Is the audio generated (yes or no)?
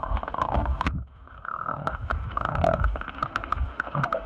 yes